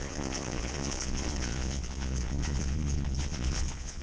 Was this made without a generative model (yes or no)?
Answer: no